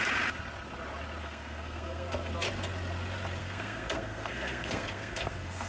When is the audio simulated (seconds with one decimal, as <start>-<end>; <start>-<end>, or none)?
1.2-2.3; 3.4-5.7